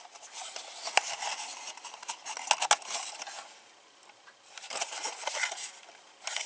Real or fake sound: real